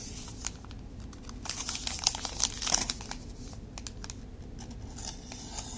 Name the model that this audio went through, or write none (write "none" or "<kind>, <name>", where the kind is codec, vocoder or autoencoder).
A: none